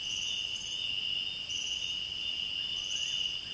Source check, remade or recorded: recorded